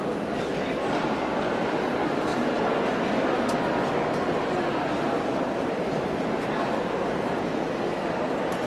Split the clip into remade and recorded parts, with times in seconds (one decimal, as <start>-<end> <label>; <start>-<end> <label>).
0.0-8.7 recorded